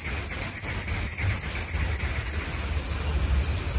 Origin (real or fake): real